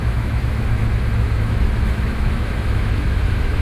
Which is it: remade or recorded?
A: remade